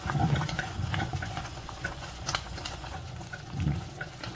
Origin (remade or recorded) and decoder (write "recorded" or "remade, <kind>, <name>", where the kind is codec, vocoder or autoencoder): remade, vocoder, Vocos